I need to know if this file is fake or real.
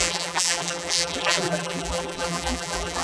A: fake